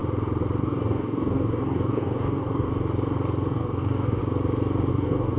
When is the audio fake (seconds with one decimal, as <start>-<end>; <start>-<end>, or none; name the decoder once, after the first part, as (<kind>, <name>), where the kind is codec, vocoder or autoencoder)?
0.6-2.7 (codec, DAC); 3.5-4.2; 4.9-5.4